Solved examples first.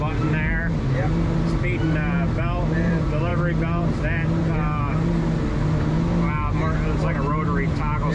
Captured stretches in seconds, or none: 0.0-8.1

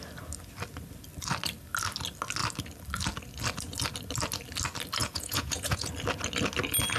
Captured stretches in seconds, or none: 0.0-5.0; 5.9-7.0

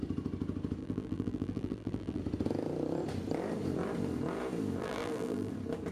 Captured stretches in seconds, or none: 0.0-0.8; 2.2-4.8; 5.5-5.9

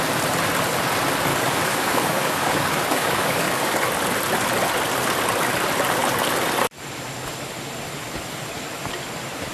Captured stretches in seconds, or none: 0.0-1.3; 3.9-9.5

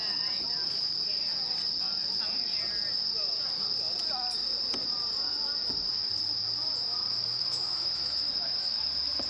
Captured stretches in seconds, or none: 0.0-6.8; 8.9-9.3